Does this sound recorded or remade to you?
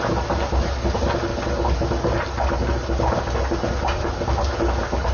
recorded